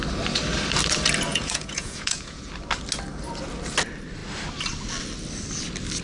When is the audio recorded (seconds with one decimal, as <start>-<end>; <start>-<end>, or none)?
0.0-1.3; 2.5-6.0